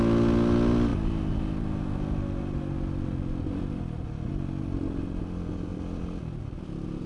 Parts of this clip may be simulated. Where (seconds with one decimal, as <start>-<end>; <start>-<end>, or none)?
none